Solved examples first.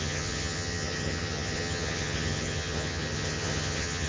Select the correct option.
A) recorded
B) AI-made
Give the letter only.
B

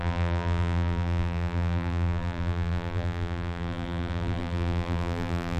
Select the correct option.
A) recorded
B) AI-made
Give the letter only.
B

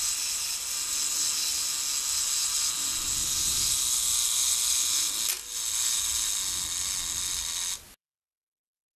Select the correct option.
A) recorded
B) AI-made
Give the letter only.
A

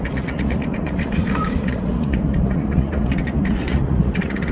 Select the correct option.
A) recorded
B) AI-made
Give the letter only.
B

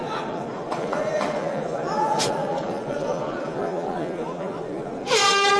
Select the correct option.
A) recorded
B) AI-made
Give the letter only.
B